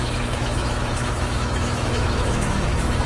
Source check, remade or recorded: remade